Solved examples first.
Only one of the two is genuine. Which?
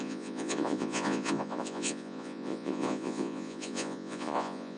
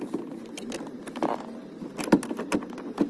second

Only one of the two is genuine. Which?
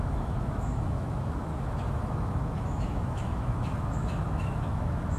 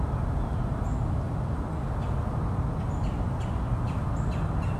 second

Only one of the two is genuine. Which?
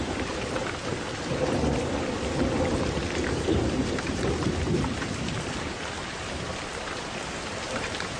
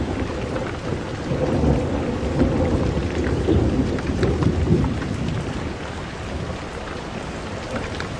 second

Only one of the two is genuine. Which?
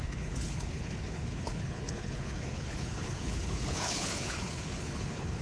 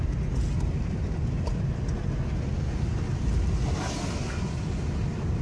second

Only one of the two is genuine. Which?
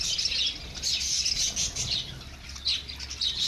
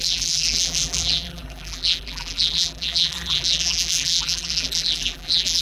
first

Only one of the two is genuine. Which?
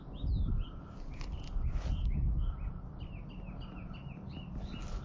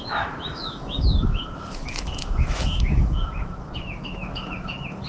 first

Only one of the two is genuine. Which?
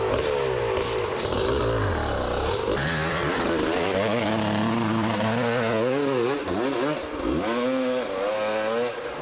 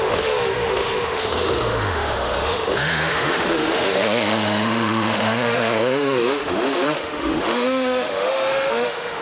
first